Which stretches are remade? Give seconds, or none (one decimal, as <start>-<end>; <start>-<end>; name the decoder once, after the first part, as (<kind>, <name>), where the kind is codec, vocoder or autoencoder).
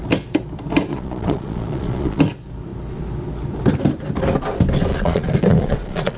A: 0.9-2.2 (vocoder, Vocos); 4.9-6.2